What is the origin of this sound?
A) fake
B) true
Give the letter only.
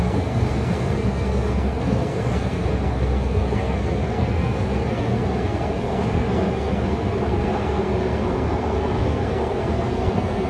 A